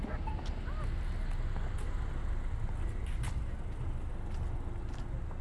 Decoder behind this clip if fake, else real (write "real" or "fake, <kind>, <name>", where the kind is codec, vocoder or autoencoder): real